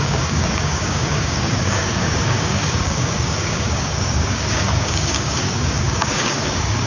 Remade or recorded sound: remade